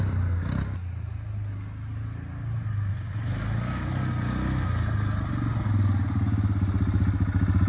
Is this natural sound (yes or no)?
yes